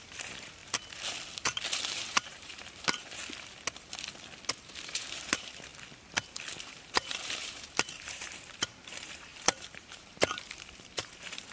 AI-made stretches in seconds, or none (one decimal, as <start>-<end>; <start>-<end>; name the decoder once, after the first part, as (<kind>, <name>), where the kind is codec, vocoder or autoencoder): 0.0-0.6 (vocoder, BigVGAN v2); 1.9-3.2; 4.6-5.7; 6.6-11.5